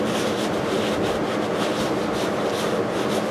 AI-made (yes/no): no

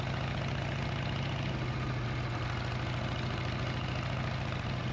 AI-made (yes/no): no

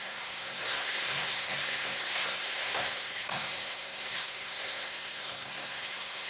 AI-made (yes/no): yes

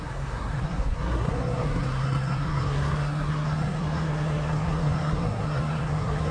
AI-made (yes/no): yes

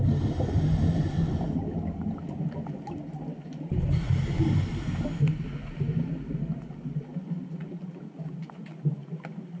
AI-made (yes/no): no